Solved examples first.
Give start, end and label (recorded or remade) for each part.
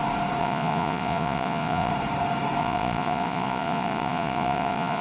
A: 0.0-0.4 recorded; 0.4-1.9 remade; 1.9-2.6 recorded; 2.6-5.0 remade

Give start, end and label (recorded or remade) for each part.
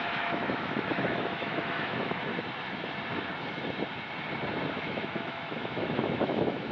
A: 0.0-2.3 remade; 2.3-4.7 recorded; 4.7-6.7 remade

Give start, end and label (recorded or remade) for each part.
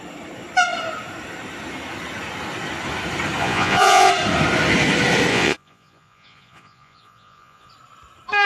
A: 0.0-3.4 recorded; 3.4-4.1 remade; 4.1-5.3 recorded; 5.3-7.7 remade; 7.7-8.5 recorded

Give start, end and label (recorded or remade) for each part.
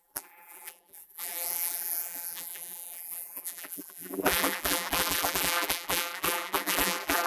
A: 0.0-7.3 remade